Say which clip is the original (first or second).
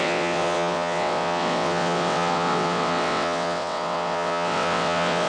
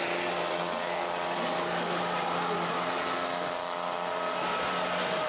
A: second